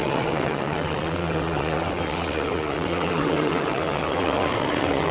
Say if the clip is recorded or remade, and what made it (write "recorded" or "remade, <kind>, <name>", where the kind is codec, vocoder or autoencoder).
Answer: remade, vocoder, WaveNeXt